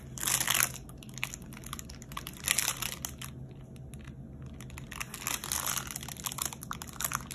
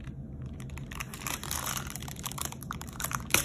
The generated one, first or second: second